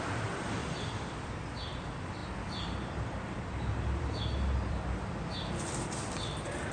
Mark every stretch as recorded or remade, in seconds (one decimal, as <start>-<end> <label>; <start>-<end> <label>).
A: 0.0-0.6 recorded; 0.6-1.5 remade; 1.5-2.2 recorded; 2.2-5.5 remade; 5.5-6.7 recorded